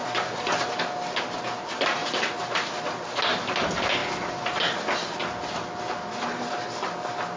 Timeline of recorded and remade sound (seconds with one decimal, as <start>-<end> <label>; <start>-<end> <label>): 0.0-0.8 remade; 0.8-2.0 recorded; 2.0-2.7 remade; 2.7-7.4 recorded